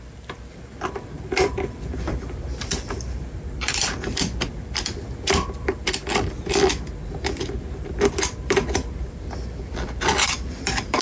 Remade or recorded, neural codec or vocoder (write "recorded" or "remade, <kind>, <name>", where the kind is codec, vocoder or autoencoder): remade, vocoder, BigVGAN v2